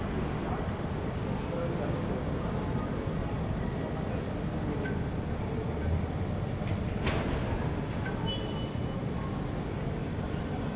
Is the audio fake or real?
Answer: real